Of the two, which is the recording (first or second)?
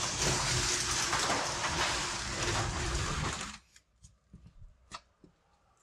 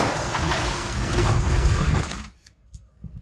first